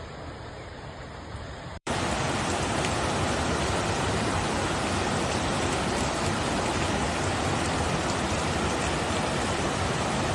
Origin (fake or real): fake